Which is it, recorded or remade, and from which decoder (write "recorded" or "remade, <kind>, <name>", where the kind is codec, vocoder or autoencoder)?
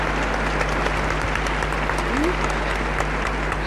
recorded